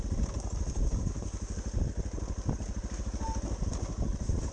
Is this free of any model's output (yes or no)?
yes